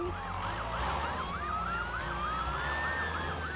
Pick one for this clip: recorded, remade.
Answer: recorded